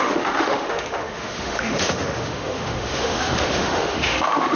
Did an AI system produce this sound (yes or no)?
yes